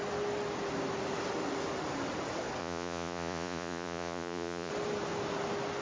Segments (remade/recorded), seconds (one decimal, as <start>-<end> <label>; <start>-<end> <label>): 0.0-2.6 recorded; 2.6-4.7 remade; 4.7-5.8 recorded